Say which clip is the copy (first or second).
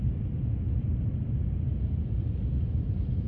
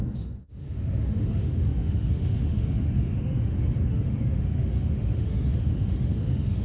second